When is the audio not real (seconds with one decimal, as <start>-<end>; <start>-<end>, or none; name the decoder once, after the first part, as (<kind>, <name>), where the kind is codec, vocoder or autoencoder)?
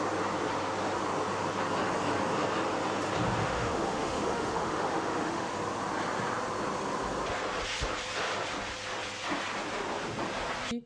3.4-5.5 (autoencoder, DAC-VAE)